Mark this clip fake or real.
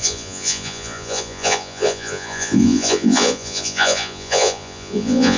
fake